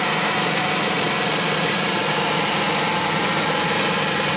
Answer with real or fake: real